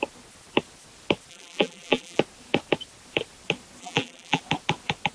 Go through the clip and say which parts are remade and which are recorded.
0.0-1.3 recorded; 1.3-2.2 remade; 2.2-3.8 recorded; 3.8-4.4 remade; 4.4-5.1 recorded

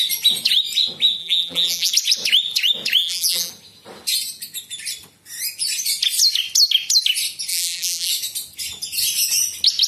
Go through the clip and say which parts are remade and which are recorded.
0.0-1.2 recorded; 1.2-1.9 remade; 1.9-3.0 recorded; 3.0-3.5 remade; 3.5-7.5 recorded; 7.5-8.1 remade; 8.1-9.9 recorded